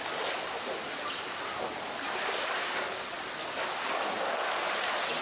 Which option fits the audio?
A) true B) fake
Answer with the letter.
A